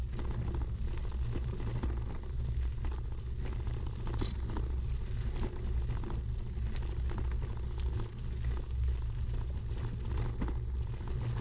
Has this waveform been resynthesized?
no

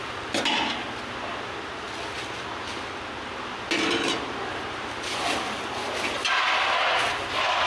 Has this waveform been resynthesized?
no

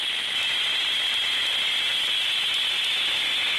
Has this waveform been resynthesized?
no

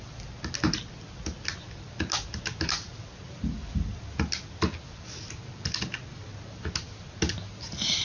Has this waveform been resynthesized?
no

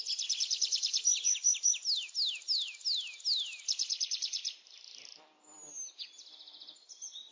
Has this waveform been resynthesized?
no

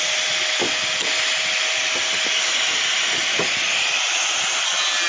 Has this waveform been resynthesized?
no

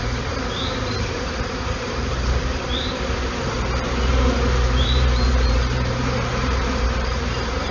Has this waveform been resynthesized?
yes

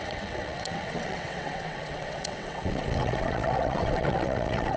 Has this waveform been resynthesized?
yes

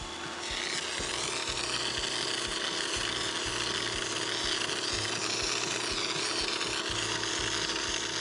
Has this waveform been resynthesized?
no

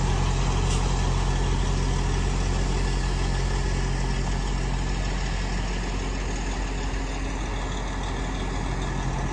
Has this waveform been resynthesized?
no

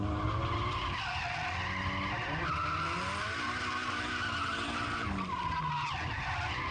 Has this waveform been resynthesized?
no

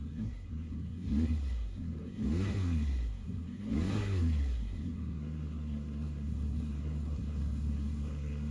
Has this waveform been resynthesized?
yes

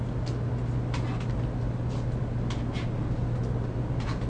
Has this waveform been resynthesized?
no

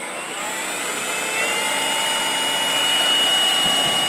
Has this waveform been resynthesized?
no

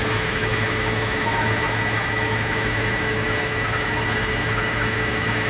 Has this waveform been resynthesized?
yes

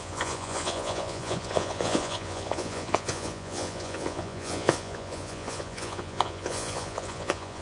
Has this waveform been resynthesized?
yes